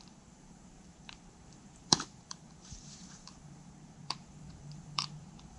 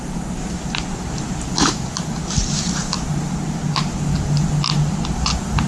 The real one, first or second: second